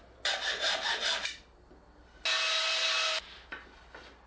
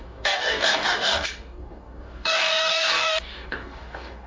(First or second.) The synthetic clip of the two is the second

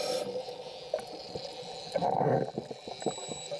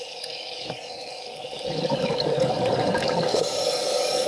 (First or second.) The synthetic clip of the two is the second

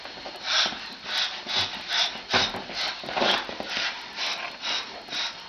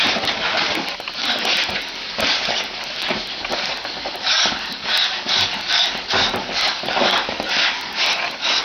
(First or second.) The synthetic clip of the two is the second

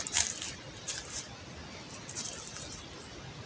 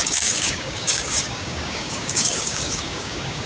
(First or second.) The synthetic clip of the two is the second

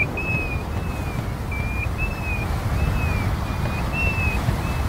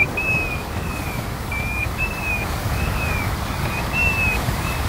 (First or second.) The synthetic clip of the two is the second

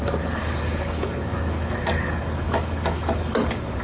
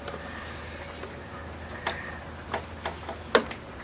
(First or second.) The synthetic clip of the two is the first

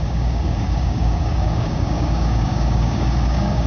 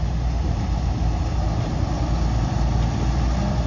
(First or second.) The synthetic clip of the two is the first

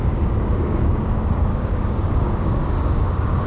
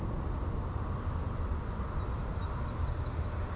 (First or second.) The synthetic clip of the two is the first